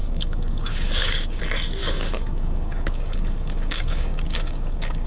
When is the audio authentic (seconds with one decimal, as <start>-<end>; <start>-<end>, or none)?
1.4-1.8

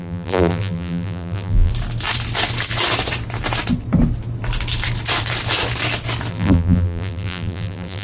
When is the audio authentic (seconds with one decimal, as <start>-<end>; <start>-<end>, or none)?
1.7-6.3

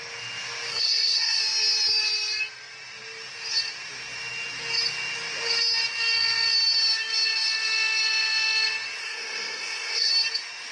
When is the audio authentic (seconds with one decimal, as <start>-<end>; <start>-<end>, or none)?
0.0-0.7; 1.4-9.0; 10.1-10.7

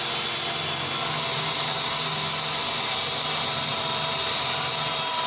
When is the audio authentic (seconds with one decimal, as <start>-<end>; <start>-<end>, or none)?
0.0-3.7

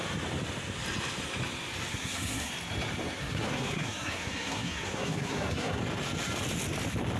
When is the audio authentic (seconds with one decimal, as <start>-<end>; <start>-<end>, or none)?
0.0-1.9; 2.5-3.2; 5.8-7.2

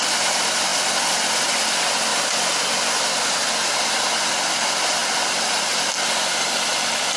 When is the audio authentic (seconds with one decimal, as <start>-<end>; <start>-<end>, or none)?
0.7-1.3; 5.0-5.6

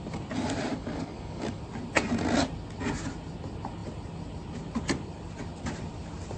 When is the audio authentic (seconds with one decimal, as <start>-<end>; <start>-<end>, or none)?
0.0-0.7; 1.6-6.4

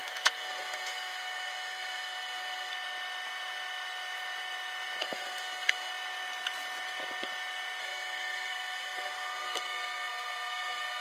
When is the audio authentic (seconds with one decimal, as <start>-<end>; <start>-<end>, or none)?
2.7-5.0; 5.9-7.8